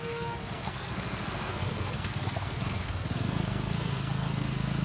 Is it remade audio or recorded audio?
remade